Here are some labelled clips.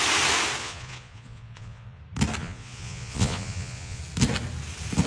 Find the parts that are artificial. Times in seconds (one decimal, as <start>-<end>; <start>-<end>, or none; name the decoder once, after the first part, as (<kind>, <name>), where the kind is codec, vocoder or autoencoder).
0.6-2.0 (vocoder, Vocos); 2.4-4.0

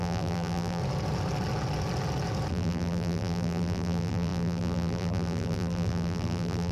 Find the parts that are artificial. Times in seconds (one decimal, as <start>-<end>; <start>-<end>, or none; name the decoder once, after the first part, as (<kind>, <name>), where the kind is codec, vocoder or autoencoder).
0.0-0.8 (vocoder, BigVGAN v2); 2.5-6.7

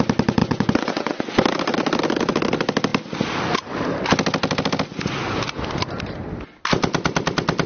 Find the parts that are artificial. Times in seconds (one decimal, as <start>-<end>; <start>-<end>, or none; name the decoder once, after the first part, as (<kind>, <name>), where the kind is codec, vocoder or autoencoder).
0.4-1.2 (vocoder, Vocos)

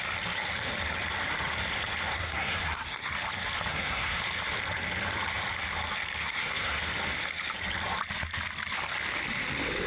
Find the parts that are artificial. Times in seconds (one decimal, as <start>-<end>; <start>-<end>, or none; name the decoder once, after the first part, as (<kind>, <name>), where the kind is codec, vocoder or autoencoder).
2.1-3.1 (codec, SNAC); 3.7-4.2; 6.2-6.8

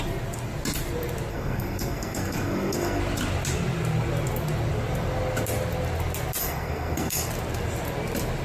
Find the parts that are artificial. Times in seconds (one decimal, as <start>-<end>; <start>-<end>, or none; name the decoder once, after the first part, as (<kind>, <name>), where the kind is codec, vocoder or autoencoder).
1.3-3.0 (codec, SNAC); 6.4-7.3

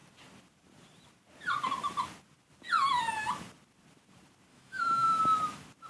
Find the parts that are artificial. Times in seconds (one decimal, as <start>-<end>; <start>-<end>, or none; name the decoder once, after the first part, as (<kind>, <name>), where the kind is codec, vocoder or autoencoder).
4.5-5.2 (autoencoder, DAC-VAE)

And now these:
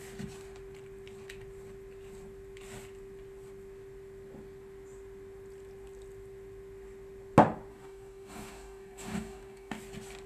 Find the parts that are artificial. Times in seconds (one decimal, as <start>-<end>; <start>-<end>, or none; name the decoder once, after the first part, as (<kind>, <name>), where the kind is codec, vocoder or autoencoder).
7.7-9.8 (codec, DAC)